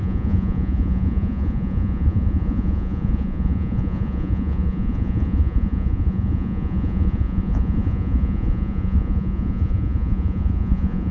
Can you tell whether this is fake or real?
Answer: fake